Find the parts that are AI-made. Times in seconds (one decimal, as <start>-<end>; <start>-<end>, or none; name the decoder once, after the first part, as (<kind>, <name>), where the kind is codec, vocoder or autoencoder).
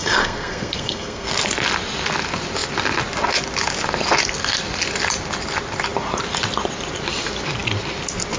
0.0-1.3 (codec, SNAC)